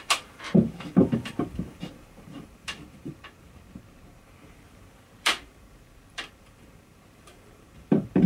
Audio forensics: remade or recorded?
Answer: remade